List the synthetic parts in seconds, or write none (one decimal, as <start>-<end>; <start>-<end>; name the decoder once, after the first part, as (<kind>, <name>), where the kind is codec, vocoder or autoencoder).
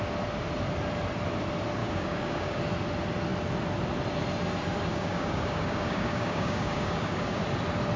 1.8-2.6 (codec, DAC); 4.9-7.4